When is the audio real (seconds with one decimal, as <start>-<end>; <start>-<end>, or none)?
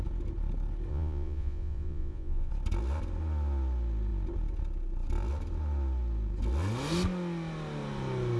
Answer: 0.0-0.9; 2.5-8.4